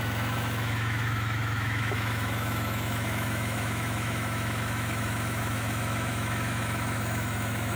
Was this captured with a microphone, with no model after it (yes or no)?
no